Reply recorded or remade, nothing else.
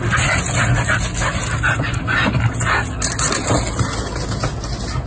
recorded